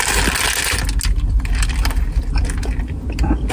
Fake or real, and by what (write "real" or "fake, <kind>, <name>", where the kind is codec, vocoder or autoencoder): real